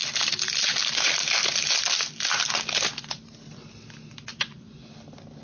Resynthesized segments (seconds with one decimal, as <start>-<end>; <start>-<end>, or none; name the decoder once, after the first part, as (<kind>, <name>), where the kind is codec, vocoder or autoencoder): 4.3-4.9 (vocoder, Vocos)